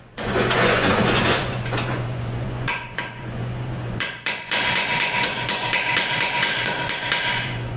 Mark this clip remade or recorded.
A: remade